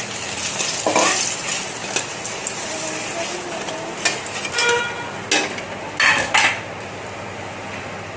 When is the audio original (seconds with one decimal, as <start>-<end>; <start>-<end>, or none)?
0.0-8.2

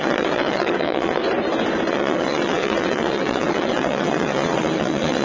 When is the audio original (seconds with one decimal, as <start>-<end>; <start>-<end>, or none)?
1.2-1.9

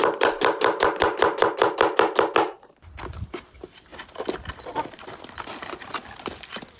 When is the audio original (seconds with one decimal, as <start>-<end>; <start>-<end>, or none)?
0.0-6.8

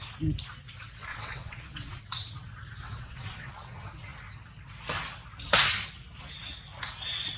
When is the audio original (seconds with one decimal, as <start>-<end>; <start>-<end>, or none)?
0.0-1.1; 2.0-2.8; 3.5-7.4

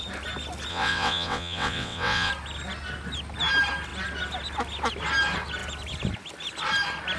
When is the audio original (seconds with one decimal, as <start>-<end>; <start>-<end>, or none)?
0.0-0.7; 2.3-7.2